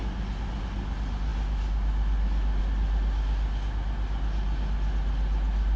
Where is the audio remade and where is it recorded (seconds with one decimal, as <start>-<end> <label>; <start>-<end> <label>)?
0.0-5.8 recorded